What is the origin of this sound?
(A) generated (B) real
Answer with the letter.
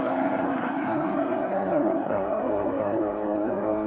A